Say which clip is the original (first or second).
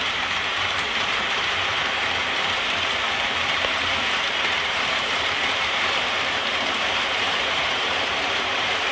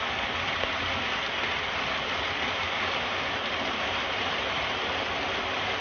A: second